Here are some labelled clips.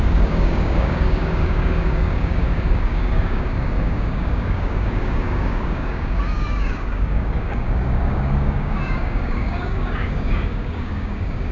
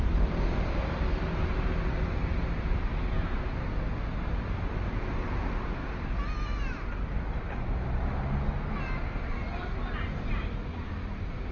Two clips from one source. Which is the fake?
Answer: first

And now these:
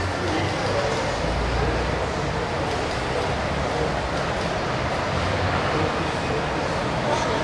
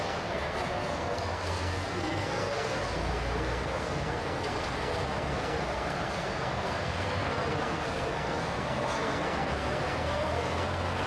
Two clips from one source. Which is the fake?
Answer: second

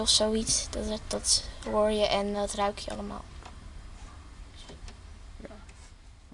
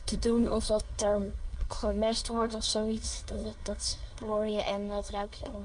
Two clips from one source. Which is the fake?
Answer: second